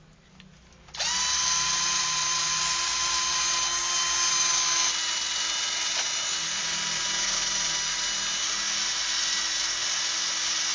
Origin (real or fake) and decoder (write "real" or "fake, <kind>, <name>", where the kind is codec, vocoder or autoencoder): real